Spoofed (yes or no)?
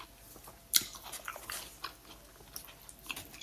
no